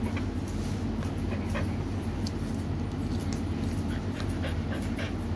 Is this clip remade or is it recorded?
recorded